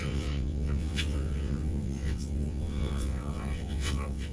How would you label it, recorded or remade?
remade